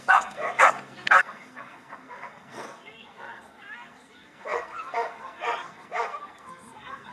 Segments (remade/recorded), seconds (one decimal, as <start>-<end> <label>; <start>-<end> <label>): 0.0-7.1 remade